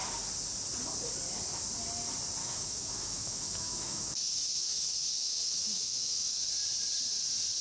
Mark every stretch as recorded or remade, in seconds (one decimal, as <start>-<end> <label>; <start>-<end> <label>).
0.0-2.4 recorded; 2.4-6.4 remade; 6.4-7.6 recorded